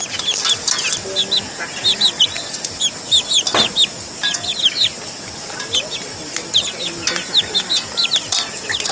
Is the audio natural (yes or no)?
yes